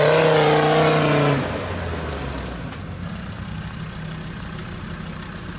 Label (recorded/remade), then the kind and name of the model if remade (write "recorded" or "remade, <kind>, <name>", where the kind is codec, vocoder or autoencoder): recorded